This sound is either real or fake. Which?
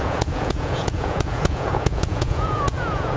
fake